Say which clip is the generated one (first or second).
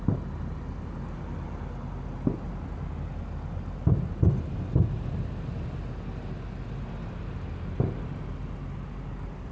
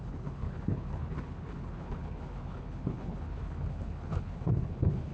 second